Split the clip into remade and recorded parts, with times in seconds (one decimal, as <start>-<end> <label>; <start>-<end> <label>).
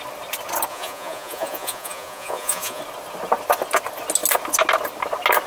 0.0-0.7 recorded; 0.7-2.8 remade; 2.8-5.5 recorded